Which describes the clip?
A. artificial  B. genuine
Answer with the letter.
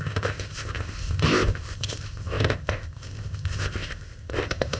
A